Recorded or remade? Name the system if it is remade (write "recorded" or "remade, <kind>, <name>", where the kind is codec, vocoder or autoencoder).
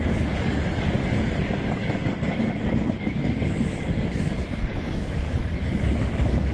remade, codec, DAC